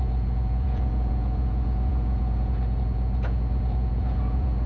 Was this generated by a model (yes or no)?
yes